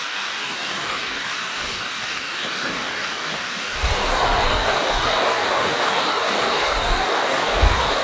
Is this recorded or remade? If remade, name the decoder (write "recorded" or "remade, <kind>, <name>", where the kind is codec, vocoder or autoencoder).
remade, codec, DAC